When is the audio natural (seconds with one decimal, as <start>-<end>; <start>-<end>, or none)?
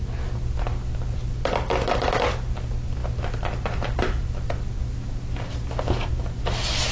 0.0-6.9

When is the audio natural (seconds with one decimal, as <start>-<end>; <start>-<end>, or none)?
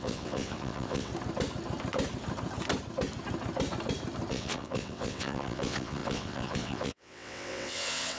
1.1-4.3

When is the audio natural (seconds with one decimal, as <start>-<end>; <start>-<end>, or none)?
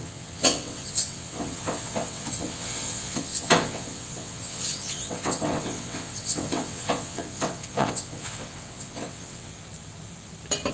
9.5-10.7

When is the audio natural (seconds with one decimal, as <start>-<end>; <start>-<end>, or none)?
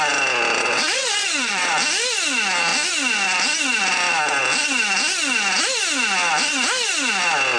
0.0-0.6; 1.7-7.6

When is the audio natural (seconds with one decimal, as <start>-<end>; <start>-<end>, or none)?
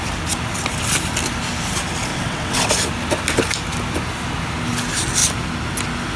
0.0-2.1; 2.7-6.2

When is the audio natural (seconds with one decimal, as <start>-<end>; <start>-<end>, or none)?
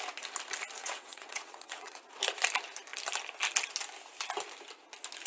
0.0-0.8; 2.0-5.3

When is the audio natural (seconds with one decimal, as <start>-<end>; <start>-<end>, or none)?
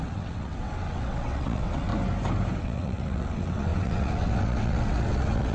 1.9-2.6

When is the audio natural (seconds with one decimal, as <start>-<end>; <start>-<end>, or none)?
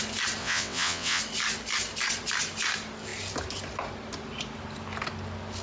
0.0-0.4; 1.2-5.6